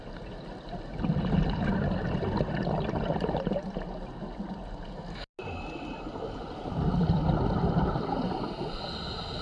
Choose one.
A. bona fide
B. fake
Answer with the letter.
A